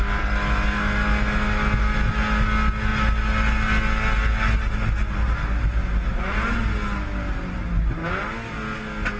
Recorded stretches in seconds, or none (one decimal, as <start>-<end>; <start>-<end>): 0.0-9.2